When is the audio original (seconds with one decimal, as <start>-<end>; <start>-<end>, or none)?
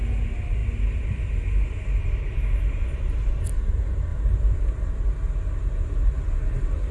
0.0-4.1; 4.9-6.9